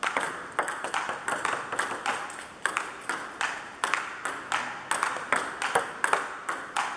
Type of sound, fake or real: real